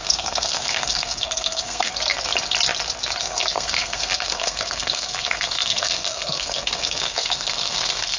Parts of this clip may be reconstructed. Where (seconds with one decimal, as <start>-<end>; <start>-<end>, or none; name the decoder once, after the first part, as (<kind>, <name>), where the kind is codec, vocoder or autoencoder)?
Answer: 0.0-1.9 (codec, SNAC); 3.2-8.2